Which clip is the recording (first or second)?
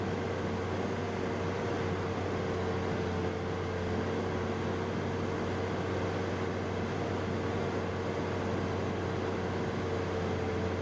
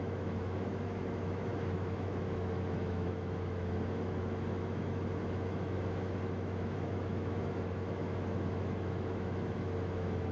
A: first